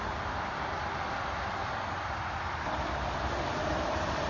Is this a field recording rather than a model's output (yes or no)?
yes